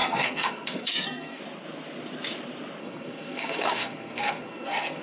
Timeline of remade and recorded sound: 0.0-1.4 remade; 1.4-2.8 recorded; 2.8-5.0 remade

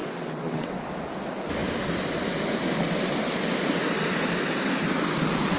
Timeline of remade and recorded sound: 0.0-0.7 remade; 0.7-5.6 recorded

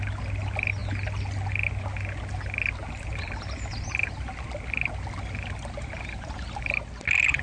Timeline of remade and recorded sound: 0.0-7.4 recorded

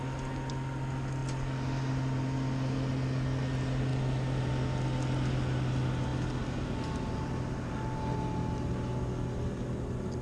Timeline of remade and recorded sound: 0.0-10.2 recorded

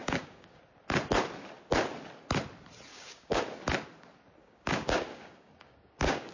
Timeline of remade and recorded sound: 0.0-0.6 remade; 0.6-2.9 recorded; 2.9-3.4 remade; 3.4-4.4 recorded; 4.4-6.3 remade

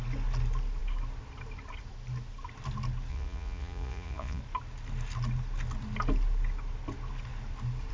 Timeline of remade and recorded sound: 0.0-3.1 recorded; 3.1-4.4 remade; 4.4-7.9 recorded

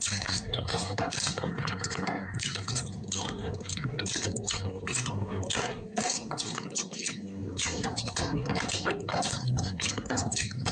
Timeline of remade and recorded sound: 0.0-10.7 remade

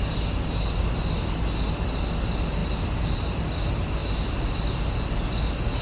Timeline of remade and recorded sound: 0.0-5.8 recorded